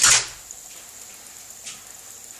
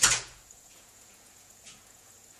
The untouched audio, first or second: first